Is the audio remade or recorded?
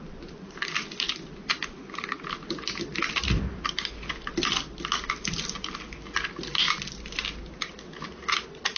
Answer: recorded